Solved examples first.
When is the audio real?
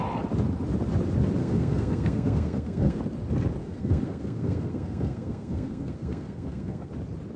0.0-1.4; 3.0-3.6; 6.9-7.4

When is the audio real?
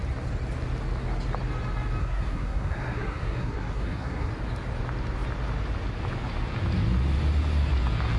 0.0-2.0; 4.3-8.2